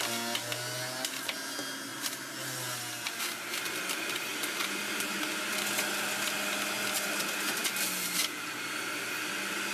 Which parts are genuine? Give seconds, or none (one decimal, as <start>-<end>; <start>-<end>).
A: 0.0-4.3; 5.5-9.7